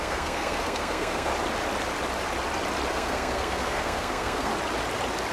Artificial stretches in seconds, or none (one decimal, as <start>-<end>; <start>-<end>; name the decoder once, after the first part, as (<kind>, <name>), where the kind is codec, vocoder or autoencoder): 0.0-1.3 (codec, SNAC); 2.9-4.5